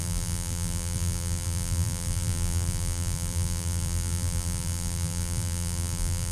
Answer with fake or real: fake